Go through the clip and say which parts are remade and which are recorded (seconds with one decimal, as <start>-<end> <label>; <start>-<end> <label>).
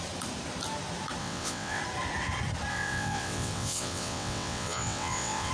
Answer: 0.0-1.2 recorded; 1.2-1.8 remade; 1.8-2.7 recorded; 2.7-5.5 remade